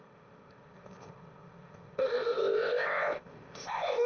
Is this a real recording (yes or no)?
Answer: no